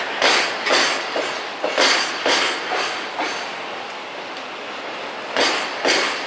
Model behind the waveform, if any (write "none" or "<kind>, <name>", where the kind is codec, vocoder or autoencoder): none